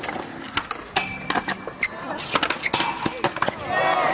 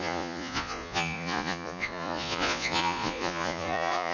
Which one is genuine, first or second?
first